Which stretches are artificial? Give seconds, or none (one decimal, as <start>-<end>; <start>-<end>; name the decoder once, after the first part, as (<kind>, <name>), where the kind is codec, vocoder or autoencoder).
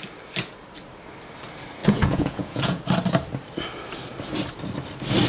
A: 1.8-2.8 (vocoder, Vocos)